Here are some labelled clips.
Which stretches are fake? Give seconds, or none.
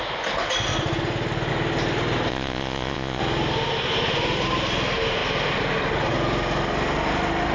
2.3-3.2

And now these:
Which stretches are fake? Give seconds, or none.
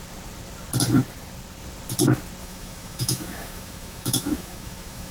2.4-5.1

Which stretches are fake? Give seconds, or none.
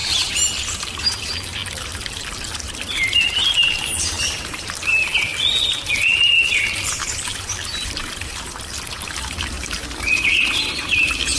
0.7-1.6; 2.6-4.9; 6.6-11.4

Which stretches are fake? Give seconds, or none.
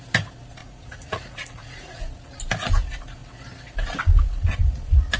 0.6-2.0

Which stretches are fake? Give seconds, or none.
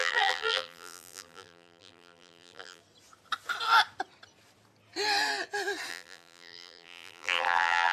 0.0-2.8; 5.9-7.9